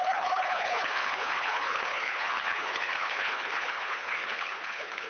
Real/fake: fake